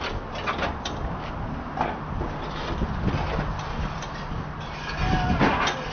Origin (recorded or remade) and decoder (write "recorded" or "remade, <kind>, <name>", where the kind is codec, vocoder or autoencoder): recorded